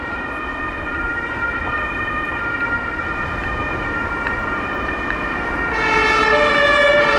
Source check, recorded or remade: recorded